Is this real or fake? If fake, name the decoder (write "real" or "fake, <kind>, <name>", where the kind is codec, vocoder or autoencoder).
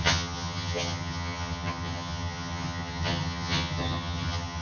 fake, vocoder, HiFi-GAN